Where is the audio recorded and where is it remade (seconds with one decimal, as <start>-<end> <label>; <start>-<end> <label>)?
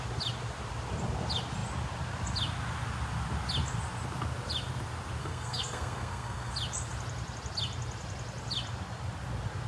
0.0-5.2 recorded; 5.2-6.5 remade; 6.5-9.7 recorded